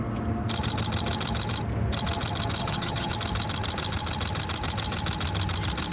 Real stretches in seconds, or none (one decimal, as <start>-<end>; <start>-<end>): 0.0-2.6; 3.1-5.9

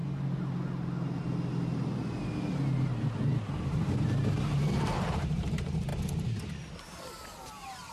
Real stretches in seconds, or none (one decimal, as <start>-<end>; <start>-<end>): 0.0-3.3; 5.9-7.9

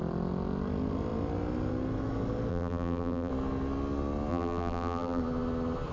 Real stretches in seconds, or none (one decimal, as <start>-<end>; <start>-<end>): 0.0-2.5; 3.3-4.3; 5.2-5.9